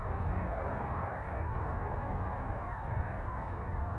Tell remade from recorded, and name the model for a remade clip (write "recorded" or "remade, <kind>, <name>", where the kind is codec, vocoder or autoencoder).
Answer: remade, codec, DAC